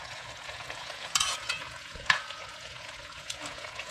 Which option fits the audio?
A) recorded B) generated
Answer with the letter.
B